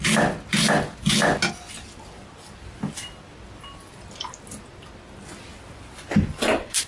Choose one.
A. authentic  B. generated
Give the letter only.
A